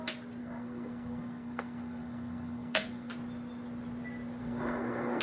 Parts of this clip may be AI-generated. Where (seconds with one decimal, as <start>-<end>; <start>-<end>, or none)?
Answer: 0.4-3.1; 4.4-5.2